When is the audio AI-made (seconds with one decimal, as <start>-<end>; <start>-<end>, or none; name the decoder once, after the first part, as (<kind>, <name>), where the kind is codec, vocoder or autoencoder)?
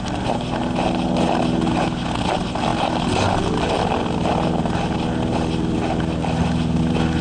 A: none